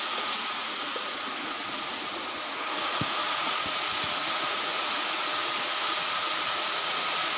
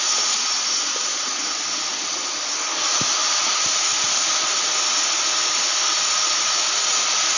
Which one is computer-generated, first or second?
first